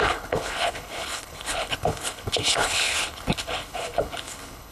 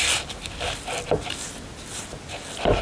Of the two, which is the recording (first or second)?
second